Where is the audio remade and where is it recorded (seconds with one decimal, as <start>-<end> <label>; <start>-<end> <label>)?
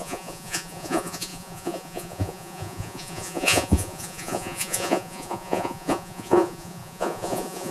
0.0-7.7 remade